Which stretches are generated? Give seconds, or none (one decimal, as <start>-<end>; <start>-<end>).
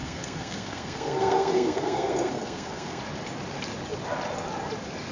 0.0-3.0